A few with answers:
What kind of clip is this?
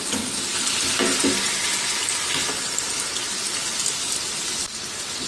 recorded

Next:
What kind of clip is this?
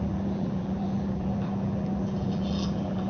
remade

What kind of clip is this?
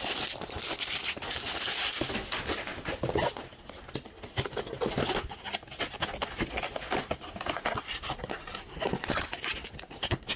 recorded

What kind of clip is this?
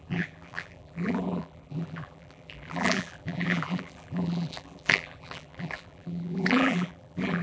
remade